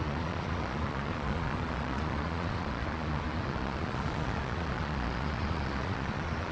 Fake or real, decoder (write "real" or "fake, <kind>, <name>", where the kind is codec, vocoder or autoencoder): fake, vocoder, Vocos